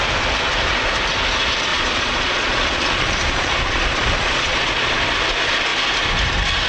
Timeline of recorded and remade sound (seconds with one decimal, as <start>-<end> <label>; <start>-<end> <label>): 0.0-1.7 recorded; 1.7-5.0 remade; 5.0-6.7 recorded